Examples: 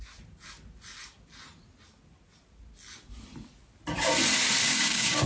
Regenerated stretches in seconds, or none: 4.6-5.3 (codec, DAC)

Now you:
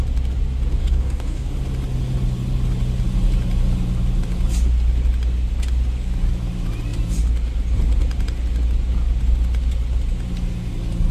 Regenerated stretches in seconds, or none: 0.8-1.5 (codec, DAC)

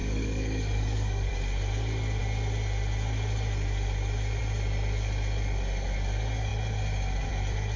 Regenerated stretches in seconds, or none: 0.0-1.3 (codec, DAC)

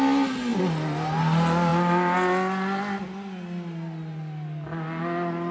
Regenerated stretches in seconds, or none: none

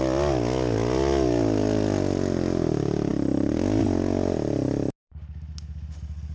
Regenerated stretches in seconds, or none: none

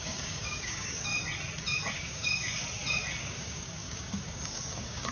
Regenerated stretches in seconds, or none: 0.0-1.1 (codec, DAC); 1.9-2.6; 3.2-5.1